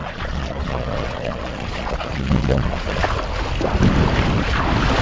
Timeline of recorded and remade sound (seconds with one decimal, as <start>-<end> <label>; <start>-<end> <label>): 0.0-3.0 remade; 3.0-5.0 recorded